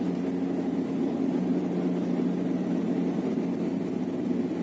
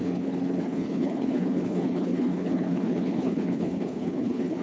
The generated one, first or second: second